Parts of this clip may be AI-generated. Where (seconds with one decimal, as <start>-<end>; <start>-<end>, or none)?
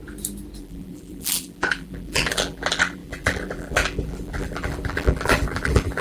0.6-6.0